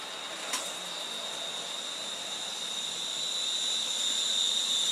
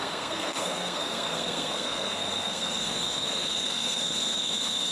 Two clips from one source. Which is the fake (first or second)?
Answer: second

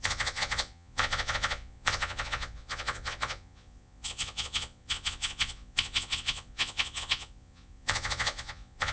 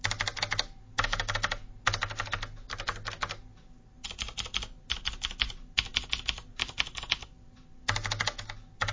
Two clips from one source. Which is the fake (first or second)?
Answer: first